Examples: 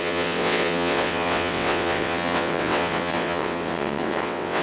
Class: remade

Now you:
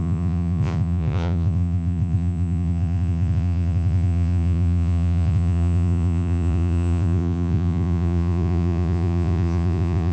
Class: remade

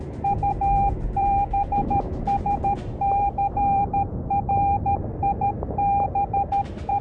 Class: remade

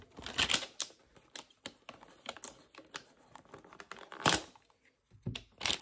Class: recorded